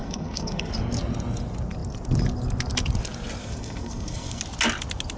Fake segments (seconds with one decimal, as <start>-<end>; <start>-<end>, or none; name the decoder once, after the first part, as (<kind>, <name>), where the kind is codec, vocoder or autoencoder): 0.0-0.7 (codec, SNAC); 3.4-4.4